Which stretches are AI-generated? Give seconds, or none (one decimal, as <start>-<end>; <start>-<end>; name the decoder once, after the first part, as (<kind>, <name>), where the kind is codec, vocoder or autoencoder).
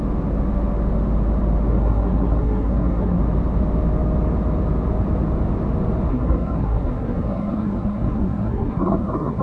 1.7-3.2 (codec, SNAC); 6.1-9.4